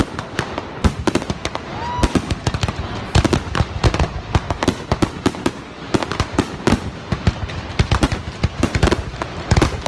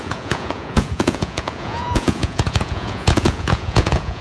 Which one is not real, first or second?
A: second